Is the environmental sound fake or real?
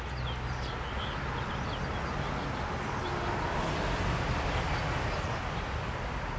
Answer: real